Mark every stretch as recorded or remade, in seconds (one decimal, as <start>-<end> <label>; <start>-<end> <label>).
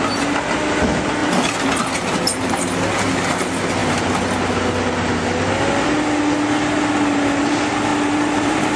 0.0-7.9 recorded; 7.9-8.8 remade